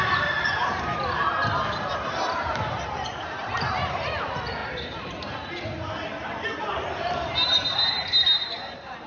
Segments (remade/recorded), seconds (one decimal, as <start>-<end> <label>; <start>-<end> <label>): 0.0-4.6 remade; 4.6-6.6 recorded; 6.6-9.1 remade